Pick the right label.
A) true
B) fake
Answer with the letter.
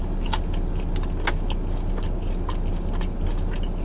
A